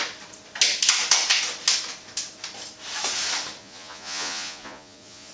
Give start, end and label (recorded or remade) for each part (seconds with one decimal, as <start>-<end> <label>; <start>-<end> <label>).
0.0-3.6 recorded; 3.6-5.3 remade